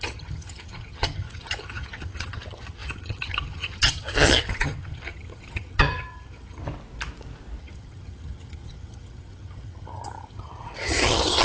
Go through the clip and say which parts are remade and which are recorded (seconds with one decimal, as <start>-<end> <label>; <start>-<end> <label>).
0.0-6.6 remade; 6.6-7.6 recorded; 7.6-11.4 remade